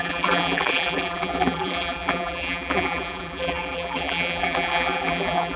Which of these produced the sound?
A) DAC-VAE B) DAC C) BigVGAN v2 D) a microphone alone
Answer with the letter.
C